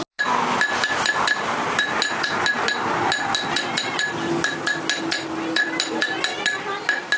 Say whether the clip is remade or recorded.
recorded